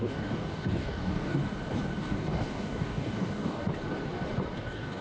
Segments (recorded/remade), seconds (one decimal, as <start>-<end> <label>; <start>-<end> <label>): 0.0-1.4 remade; 1.4-2.0 recorded; 2.0-3.6 remade; 3.6-4.6 recorded; 4.6-5.0 remade